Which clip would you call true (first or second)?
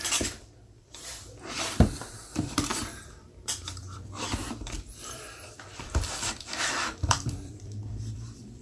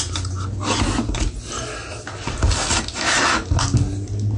second